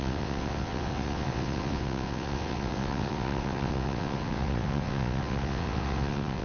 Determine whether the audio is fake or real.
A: fake